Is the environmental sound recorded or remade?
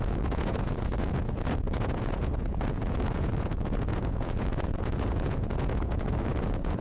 remade